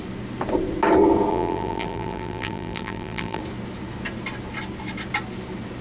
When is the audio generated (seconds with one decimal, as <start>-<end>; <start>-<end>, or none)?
1.3-3.4